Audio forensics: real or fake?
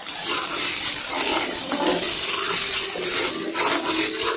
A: real